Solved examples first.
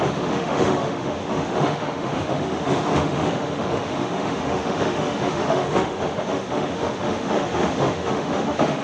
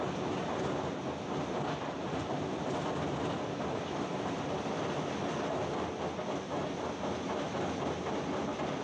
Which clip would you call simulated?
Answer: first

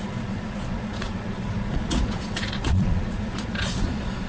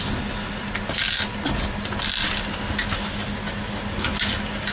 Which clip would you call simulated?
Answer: first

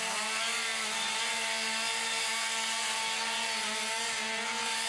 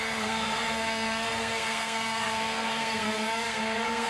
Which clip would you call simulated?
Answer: second